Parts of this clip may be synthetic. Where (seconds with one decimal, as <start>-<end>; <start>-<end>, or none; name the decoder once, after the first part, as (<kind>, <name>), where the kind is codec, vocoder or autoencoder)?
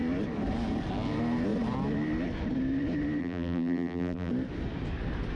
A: 3.2-4.3 (vocoder, BigVGAN v2)